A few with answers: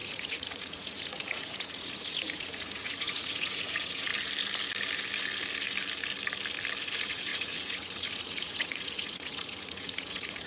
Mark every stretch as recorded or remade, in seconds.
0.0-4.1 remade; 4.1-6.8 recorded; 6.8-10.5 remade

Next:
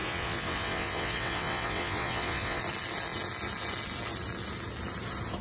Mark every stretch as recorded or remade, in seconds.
0.0-2.6 remade; 2.6-5.4 recorded

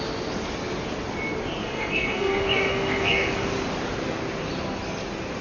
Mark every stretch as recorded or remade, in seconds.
0.0-1.6 recorded; 1.6-3.4 remade; 3.4-5.4 recorded

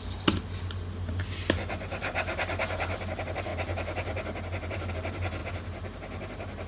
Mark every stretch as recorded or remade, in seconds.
0.0-6.7 recorded

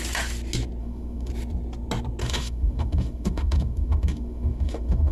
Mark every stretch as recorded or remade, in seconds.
0.0-0.8 recorded; 0.8-1.3 remade; 1.3-2.2 recorded; 2.2-5.1 remade

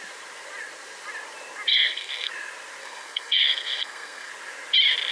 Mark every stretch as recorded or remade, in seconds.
0.0-1.7 recorded; 1.7-2.3 remade; 2.3-2.8 recorded; 2.8-4.3 remade; 4.3-5.1 recorded

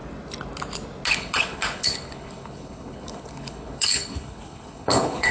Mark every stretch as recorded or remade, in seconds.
0.0-1.1 recorded; 1.1-5.3 remade